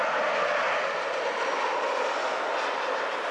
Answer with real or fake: real